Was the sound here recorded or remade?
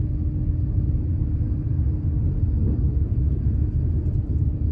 recorded